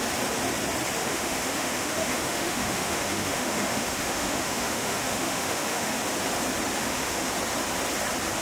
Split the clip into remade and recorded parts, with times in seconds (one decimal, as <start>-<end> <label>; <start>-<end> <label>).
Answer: 0.0-1.0 recorded; 1.0-6.0 remade; 6.0-6.8 recorded; 6.8-7.3 remade; 7.3-8.4 recorded